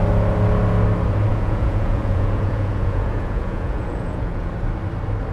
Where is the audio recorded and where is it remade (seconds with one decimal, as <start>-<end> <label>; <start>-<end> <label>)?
0.0-1.3 recorded; 1.3-4.5 remade; 4.5-5.3 recorded